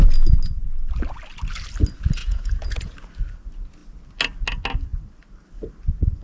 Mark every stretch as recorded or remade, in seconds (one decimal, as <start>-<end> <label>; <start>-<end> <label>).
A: 0.0-2.2 recorded; 2.2-2.9 remade; 2.9-6.2 recorded